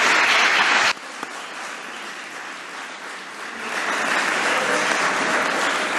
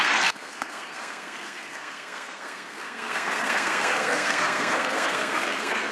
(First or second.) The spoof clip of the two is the second